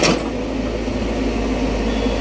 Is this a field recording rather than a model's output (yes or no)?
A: yes